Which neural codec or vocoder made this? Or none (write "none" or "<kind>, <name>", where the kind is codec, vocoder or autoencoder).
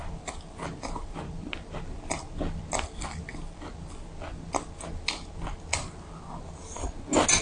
none